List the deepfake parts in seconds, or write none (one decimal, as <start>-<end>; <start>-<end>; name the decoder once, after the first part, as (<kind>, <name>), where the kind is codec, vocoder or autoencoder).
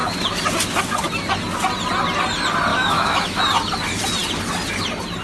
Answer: 2.7-3.4 (autoencoder, DAC-VAE)